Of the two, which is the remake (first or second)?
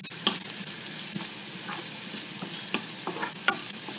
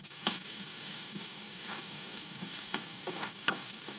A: second